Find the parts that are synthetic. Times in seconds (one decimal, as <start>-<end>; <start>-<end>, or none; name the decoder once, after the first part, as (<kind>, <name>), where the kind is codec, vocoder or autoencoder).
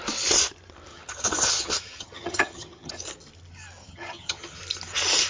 0.9-2.9 (vocoder, HiFi-GAN); 3.8-4.6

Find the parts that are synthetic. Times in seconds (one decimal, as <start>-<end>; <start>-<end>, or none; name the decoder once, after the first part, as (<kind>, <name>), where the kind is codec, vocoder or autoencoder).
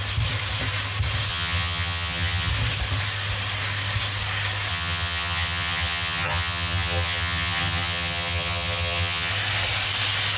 1.3-2.5 (vocoder, HiFi-GAN); 4.7-9.3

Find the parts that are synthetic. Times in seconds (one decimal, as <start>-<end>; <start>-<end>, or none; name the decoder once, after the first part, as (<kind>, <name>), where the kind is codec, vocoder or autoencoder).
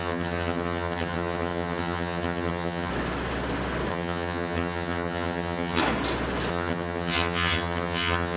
0.0-2.9 (vocoder, HiFi-GAN); 3.9-5.8; 6.5-8.4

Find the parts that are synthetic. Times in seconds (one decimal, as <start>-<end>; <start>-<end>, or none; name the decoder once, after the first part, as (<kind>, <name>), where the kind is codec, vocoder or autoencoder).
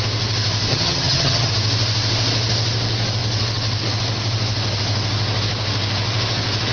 0.7-1.5 (vocoder, HiFi-GAN)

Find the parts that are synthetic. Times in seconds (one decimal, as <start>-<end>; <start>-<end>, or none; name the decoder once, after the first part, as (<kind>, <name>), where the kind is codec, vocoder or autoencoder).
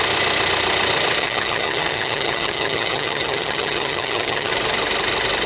1.2-4.5 (vocoder, HiFi-GAN)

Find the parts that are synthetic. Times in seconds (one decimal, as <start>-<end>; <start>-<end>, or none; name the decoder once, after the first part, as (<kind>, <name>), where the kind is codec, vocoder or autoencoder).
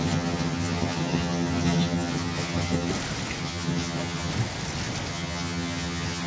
0.0-2.9 (vocoder, HiFi-GAN); 3.4-4.3; 5.1-6.3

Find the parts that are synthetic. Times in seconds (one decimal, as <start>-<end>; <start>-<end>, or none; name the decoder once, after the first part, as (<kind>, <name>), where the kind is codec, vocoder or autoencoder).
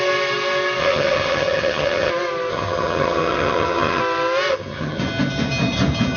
0.8-2.1 (vocoder, HiFi-GAN); 2.5-4.0; 4.5-5.0